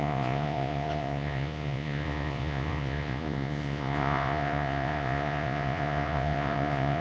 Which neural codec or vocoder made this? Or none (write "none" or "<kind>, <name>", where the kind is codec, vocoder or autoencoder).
vocoder, Vocos